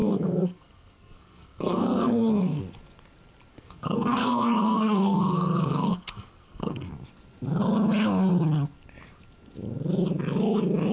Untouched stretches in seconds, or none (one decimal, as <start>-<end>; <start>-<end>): 2.6-3.5; 6.9-10.9